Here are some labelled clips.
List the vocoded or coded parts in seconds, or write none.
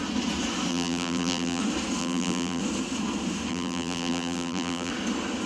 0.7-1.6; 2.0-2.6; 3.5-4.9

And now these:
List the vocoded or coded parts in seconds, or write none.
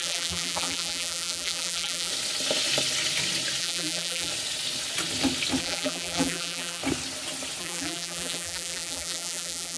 0.0-2.1; 3.6-4.3; 5.6-6.8; 7.6-9.8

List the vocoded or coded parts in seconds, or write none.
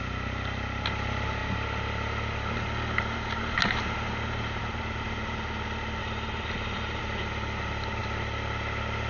6.0-7.0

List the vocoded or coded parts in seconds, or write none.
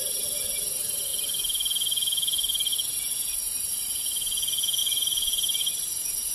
4.8-5.7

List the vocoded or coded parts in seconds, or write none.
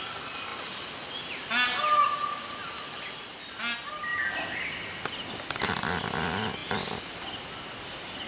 none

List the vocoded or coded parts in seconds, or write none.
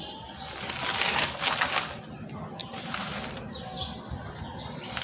2.6-3.5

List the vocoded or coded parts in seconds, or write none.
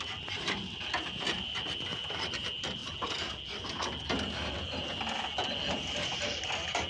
0.0-0.6; 1.2-2.8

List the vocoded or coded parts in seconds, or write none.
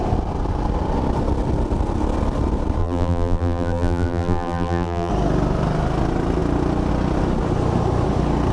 2.8-5.1